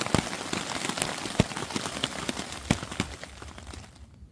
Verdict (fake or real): real